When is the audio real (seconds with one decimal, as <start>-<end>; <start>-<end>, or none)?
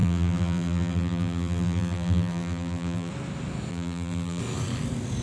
3.1-3.7; 4.4-5.2